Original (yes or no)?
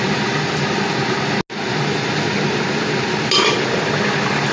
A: yes